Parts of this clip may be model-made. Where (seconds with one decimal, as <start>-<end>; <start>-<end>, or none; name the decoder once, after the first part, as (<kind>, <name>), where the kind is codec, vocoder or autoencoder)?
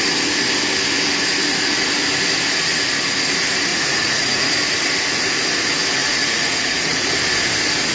3.7-4.4 (vocoder, Vocos); 6.0-7.1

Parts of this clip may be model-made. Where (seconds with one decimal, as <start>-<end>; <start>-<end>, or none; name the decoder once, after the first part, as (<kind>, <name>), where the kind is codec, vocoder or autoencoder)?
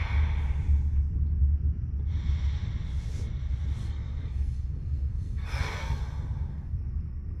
3.8-6.0 (codec, SNAC); 6.5-7.4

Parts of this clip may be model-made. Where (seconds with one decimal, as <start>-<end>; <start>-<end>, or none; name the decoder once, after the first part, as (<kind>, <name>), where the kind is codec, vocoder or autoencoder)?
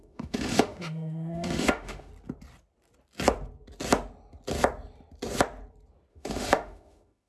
0.0-2.1 (autoencoder, DAC-VAE); 6.1-7.3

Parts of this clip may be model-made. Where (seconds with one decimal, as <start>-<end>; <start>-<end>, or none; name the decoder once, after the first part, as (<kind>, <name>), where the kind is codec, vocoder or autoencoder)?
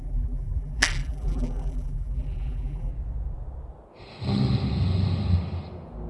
0.0-2.9 (vocoder, BigVGAN v2)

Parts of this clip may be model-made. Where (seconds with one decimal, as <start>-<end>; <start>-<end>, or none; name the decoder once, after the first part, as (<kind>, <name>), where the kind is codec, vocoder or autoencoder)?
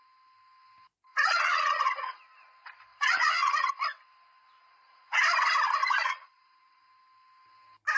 1.1-2.2 (vocoder, Vocos); 2.9-3.7; 4.6-5.2; 5.8-6.9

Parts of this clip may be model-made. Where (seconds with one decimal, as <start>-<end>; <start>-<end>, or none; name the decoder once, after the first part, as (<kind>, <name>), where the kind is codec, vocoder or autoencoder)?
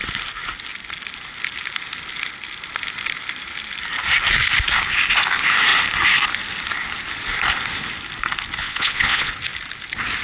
8.6-9.3 (vocoder, Vocos)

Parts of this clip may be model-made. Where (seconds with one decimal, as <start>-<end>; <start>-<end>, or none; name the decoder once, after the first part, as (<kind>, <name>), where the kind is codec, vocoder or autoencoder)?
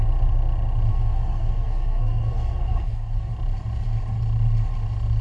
0.9-3.3 (codec, SNAC)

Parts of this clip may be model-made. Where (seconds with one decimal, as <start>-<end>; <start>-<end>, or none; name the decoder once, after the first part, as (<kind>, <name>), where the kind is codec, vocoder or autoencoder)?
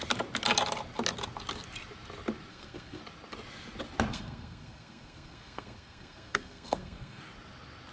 2.5-3.0 (codec, SNAC); 4.1-7.2